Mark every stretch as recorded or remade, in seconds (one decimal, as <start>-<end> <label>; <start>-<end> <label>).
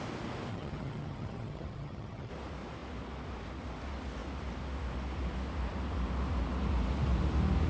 0.0-0.5 recorded; 0.5-2.3 remade; 2.3-7.7 recorded